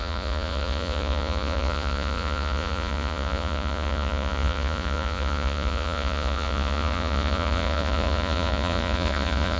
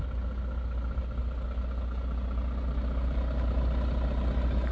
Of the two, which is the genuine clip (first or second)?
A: second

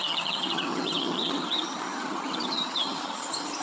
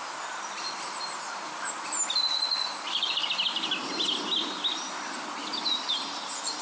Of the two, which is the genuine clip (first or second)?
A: second